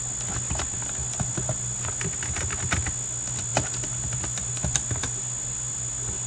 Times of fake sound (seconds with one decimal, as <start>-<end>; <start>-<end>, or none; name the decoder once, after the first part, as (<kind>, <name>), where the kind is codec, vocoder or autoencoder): none